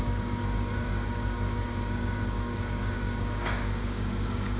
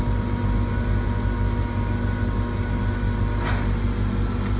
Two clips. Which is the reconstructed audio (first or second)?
first